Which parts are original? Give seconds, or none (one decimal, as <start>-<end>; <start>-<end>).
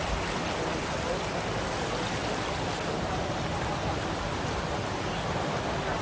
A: 0.0-6.0